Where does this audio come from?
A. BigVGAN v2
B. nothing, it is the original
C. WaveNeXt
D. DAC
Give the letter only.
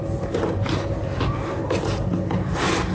B